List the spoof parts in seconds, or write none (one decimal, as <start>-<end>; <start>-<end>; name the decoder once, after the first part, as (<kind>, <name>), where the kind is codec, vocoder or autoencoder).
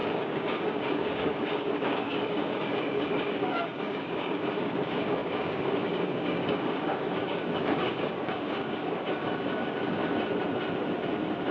0.0-10.0 (codec, DAC)